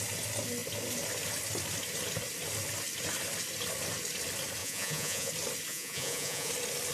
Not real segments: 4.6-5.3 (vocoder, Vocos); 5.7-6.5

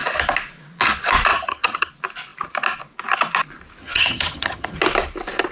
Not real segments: 1.3-1.9 (vocoder, HiFi-GAN); 3.8-4.8

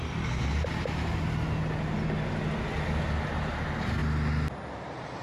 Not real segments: none

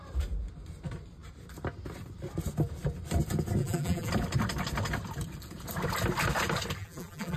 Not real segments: 3.6-4.1 (vocoder, BigVGAN v2); 6.8-7.4

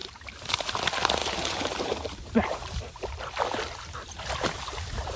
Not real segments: 1.2-2.8 (vocoder, BigVGAN v2)

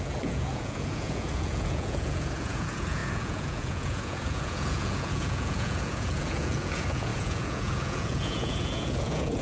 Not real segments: 0.0-9.4 (vocoder, Vocos)

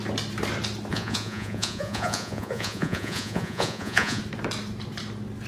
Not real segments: 0.9-4.2 (vocoder, Vocos)